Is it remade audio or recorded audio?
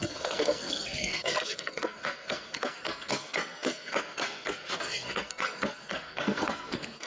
remade